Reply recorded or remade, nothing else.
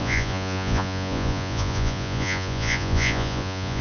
remade